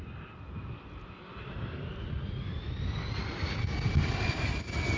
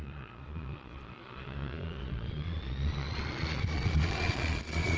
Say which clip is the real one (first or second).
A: first